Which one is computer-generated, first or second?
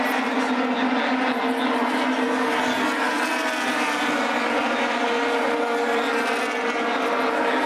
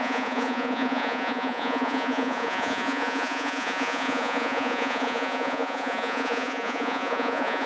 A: second